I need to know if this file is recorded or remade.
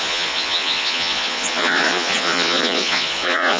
remade